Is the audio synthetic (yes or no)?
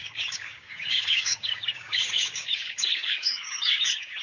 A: yes